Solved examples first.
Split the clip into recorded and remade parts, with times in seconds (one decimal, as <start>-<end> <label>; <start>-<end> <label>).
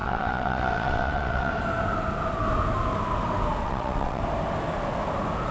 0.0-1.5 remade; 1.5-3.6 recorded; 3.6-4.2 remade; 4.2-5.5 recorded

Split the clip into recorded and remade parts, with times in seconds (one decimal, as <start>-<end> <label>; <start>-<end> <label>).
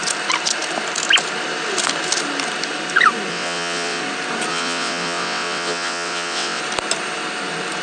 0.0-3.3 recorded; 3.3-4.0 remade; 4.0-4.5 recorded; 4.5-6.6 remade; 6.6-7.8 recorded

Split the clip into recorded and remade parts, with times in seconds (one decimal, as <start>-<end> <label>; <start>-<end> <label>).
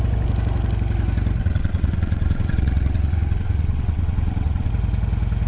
0.0-1.4 recorded; 1.4-4.7 remade; 4.7-5.5 recorded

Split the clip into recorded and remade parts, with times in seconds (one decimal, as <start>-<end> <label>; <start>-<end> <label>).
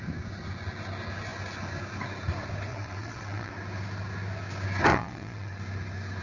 0.0-2.7 recorded; 2.7-3.5 remade; 3.5-4.9 recorded; 4.9-5.6 remade; 5.6-6.2 recorded